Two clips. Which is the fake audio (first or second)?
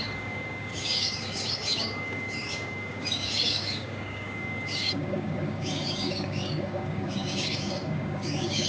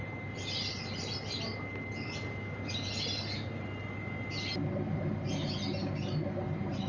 first